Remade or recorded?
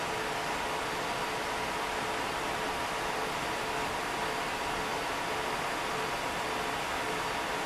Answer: recorded